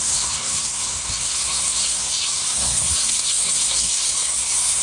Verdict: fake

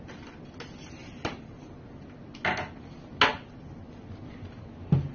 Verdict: real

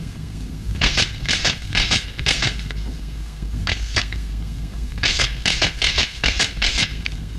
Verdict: fake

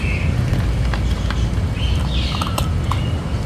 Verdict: real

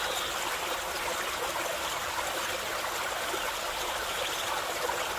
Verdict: real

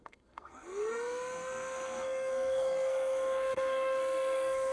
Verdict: fake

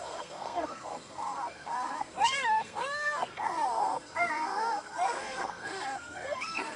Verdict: fake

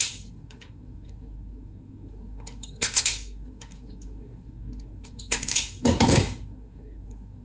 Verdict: fake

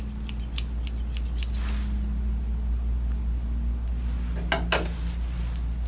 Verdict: real